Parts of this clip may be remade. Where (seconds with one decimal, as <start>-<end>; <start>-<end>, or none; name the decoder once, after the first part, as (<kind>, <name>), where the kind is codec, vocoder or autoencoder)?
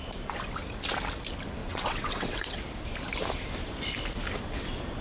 1.6-2.6 (vocoder, WaveNeXt)